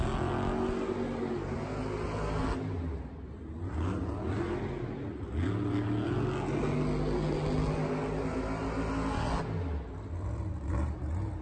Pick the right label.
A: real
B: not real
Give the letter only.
A